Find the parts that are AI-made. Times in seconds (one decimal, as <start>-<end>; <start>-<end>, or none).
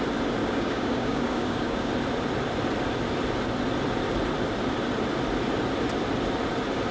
0.4-1.9